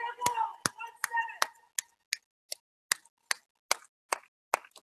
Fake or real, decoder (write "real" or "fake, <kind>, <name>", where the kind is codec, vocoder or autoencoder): real